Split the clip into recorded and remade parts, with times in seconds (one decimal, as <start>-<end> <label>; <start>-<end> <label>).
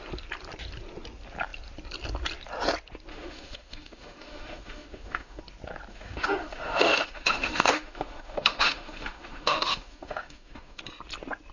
0.0-3.1 recorded; 3.1-5.4 remade; 5.4-5.9 recorded; 5.9-10.8 remade; 10.8-11.5 recorded